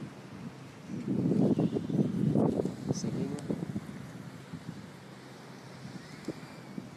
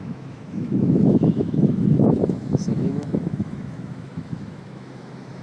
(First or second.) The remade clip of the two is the second